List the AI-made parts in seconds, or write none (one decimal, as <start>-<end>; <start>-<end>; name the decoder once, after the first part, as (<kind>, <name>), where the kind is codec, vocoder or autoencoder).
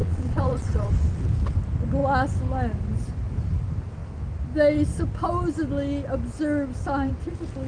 0.0-0.9 (vocoder, WaveNeXt)